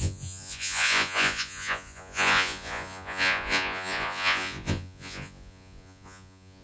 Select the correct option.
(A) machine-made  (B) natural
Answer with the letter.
A